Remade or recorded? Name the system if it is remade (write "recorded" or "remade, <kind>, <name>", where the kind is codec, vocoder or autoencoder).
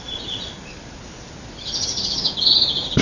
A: recorded